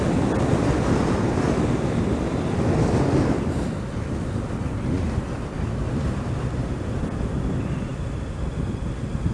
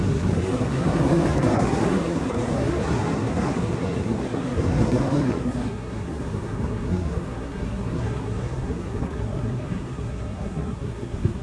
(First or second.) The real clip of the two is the first